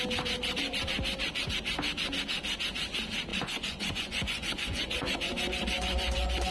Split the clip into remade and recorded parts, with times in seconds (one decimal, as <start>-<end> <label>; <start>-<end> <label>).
0.0-3.3 recorded; 3.3-6.5 remade